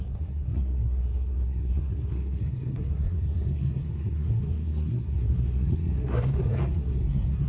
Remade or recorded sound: remade